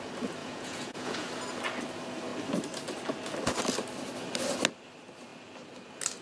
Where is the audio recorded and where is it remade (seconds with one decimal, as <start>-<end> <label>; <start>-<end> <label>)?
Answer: 0.0-0.4 recorded; 0.4-1.3 remade; 1.3-6.2 recorded